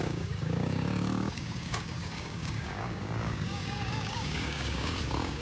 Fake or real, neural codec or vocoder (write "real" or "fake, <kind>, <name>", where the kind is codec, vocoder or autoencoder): fake, codec, DAC